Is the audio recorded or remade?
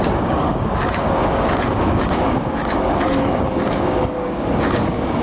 remade